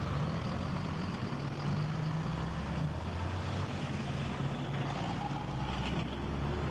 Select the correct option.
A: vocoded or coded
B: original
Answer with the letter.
B